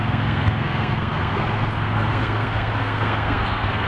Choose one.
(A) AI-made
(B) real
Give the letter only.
A